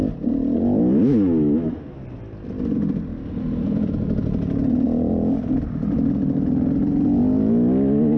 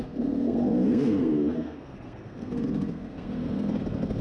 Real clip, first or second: first